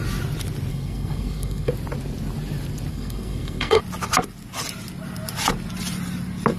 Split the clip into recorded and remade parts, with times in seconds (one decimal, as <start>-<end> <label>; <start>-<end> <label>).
0.0-0.7 recorded; 0.7-1.7 remade; 1.7-2.9 recorded; 2.9-3.8 remade; 3.8-6.6 recorded